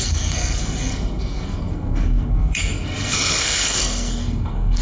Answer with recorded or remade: remade